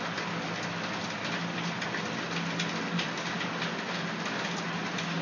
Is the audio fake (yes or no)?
no